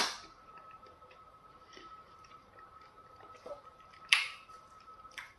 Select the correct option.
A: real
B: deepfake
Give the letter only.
B